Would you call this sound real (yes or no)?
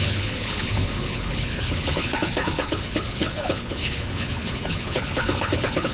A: no